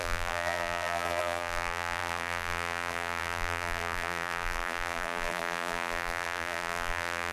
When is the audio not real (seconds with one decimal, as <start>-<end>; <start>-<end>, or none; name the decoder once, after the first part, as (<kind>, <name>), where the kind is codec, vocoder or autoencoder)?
0.0-7.3 (vocoder, BigVGAN v2)